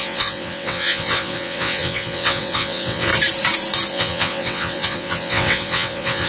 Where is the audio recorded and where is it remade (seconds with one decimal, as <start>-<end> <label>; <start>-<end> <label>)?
0.0-3.1 remade; 3.1-3.9 recorded; 3.9-6.3 remade